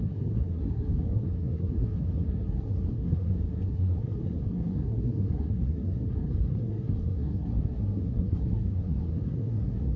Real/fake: fake